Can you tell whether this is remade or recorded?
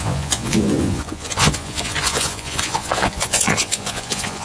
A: remade